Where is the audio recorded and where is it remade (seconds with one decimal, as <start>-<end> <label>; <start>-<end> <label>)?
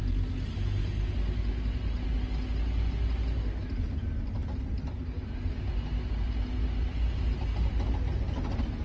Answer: 0.0-8.8 recorded